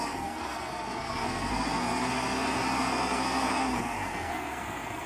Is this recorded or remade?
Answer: remade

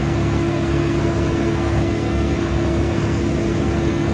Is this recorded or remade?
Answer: remade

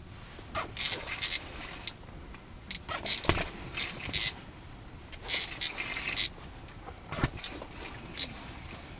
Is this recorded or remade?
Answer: recorded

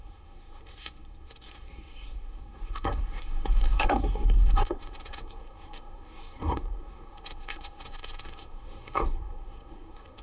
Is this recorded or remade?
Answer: remade